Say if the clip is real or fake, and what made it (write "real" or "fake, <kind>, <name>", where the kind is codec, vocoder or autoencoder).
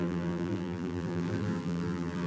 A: fake, vocoder, BigVGAN v2